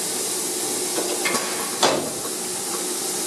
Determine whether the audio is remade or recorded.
recorded